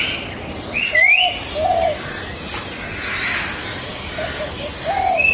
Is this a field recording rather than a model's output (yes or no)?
yes